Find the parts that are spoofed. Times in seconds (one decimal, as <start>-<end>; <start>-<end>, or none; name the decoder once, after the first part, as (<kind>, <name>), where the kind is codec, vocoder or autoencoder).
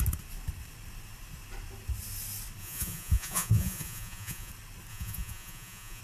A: 2.6-4.5 (vocoder, Vocos); 4.9-6.0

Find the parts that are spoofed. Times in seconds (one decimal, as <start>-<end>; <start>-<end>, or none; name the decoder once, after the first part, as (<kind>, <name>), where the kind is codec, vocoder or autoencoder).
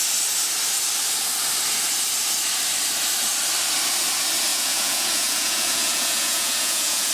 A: 4.5-7.1 (vocoder, Vocos)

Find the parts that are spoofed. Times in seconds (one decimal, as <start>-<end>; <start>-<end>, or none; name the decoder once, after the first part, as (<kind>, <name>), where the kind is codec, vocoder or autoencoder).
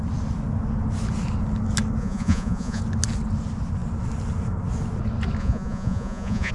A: 2.0-2.8 (vocoder, Vocos); 5.4-6.5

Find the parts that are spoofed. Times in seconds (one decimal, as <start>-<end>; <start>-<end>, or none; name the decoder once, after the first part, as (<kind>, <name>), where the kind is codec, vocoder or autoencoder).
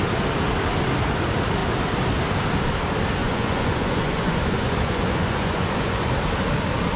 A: 3.2-6.1 (vocoder, Vocos)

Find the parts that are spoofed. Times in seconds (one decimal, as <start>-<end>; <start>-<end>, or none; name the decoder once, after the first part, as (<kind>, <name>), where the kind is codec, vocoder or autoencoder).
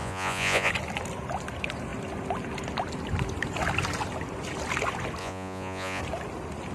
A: 0.0-0.7 (vocoder, Vocos); 5.2-6.0